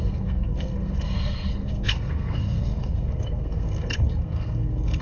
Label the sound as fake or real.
fake